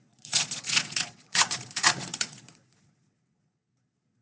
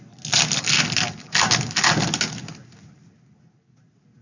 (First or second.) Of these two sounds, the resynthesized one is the first